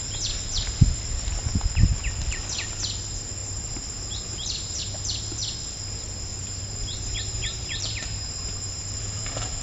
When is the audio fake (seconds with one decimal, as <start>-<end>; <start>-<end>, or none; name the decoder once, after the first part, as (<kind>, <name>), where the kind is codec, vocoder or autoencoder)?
3.4-4.8 (vocoder, BigVGAN v2); 6.3-9.0